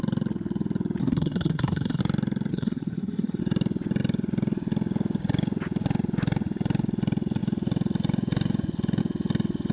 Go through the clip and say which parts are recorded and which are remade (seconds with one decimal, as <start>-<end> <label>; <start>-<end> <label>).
0.0-1.0 recorded; 1.0-2.0 remade; 2.0-2.5 recorded; 2.5-3.4 remade; 3.4-9.7 recorded